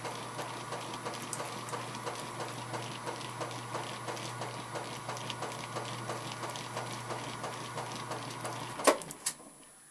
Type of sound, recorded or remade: recorded